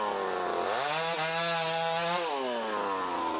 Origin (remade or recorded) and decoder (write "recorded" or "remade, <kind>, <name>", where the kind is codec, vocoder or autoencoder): recorded